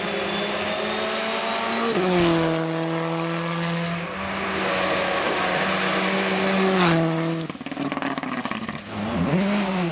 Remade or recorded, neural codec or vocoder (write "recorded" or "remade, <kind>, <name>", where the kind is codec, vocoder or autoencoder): recorded